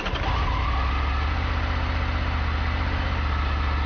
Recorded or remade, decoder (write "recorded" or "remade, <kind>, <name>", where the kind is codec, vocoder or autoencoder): recorded